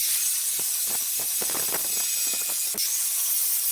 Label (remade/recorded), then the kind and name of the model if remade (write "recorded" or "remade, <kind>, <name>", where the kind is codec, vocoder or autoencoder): recorded